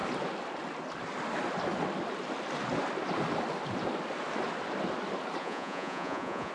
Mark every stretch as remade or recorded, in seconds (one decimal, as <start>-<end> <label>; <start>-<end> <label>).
0.0-5.4 recorded; 5.4-6.5 remade